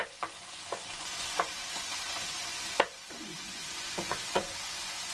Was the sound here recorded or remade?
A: remade